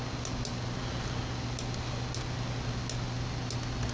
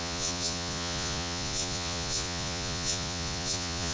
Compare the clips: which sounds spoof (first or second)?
second